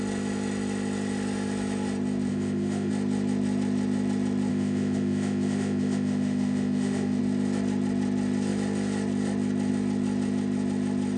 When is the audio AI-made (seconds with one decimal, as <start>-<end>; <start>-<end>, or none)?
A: 2.3-2.9; 4.5-7.2

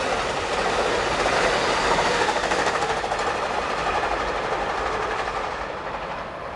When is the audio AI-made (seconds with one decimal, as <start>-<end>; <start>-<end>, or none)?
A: 2.1-3.0

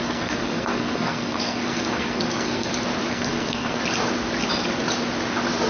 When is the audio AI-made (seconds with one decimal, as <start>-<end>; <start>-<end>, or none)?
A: 0.0-2.7; 3.1-3.8

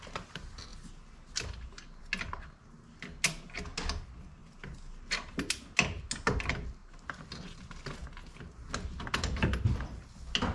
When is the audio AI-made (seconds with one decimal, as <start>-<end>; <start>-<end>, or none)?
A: none

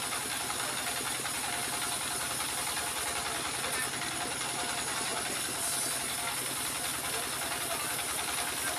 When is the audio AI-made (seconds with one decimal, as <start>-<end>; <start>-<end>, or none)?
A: none

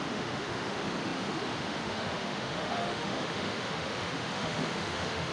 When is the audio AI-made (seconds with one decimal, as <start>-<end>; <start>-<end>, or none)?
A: 0.0-5.3